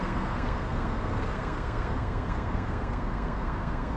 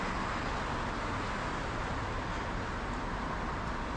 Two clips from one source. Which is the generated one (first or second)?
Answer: first